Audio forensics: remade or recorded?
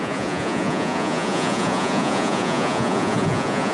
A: remade